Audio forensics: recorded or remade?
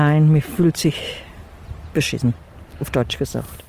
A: recorded